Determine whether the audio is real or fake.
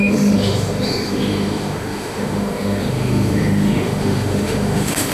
fake